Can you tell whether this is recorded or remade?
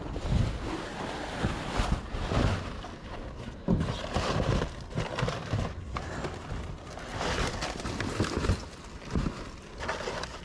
recorded